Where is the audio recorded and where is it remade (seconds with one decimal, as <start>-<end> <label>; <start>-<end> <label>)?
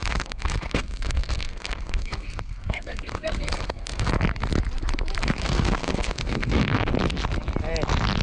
0.0-4.1 remade; 4.1-5.4 recorded; 5.4-6.9 remade; 6.9-8.2 recorded